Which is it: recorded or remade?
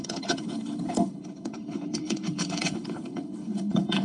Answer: remade